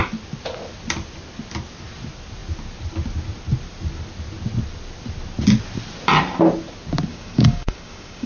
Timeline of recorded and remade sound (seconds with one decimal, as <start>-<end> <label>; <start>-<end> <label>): 0.0-7.1 recorded; 7.1-8.3 remade